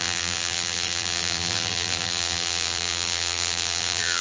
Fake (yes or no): yes